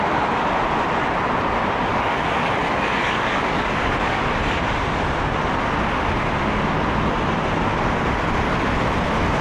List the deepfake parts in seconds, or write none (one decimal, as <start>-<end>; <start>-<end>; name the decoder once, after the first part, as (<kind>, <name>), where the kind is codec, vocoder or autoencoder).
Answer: 1.9-4.2 (codec, DAC)